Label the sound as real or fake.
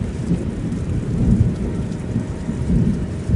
fake